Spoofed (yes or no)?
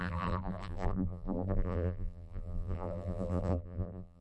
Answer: yes